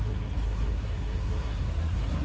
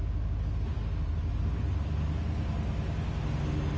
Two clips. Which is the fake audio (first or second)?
first